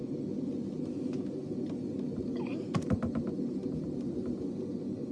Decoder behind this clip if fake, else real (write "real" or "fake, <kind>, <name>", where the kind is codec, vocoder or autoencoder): real